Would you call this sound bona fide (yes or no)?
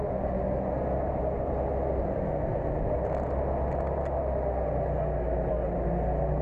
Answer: yes